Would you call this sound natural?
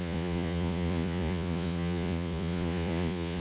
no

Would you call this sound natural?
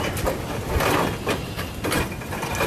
yes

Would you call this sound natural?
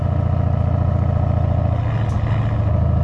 yes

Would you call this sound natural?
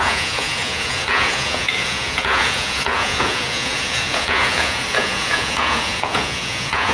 no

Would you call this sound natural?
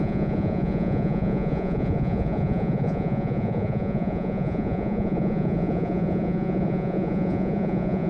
no